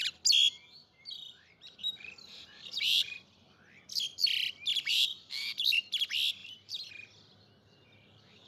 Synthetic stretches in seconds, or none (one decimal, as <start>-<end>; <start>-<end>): 0.8-3.2; 4.7-5.5; 6.4-6.9